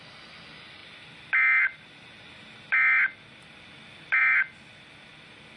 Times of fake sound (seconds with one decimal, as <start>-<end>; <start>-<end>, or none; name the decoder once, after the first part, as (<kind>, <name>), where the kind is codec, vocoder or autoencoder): none

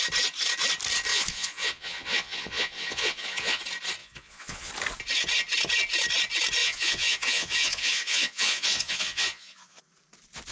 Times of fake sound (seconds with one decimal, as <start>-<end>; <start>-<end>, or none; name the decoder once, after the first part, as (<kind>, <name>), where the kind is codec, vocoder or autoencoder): 1.1-3.6 (vocoder, Vocos); 4.0-4.7; 6.6-9.8

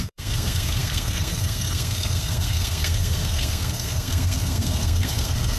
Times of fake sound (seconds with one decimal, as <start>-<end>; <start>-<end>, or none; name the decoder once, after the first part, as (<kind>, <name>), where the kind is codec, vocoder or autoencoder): 0.0-5.6 (codec, SNAC)